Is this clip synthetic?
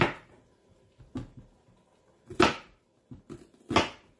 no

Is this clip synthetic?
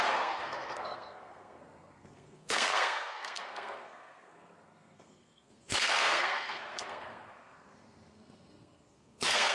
yes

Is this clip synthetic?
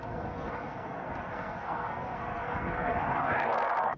yes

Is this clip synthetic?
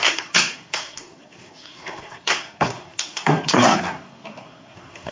yes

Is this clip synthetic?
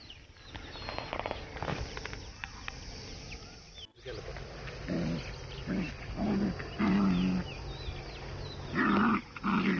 no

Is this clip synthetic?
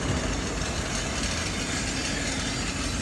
no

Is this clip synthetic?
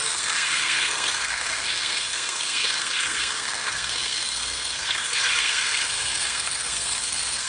yes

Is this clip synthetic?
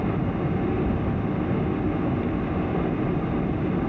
no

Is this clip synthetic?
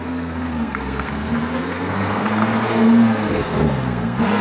yes